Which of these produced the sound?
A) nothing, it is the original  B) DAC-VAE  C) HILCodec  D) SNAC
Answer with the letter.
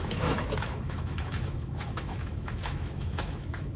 B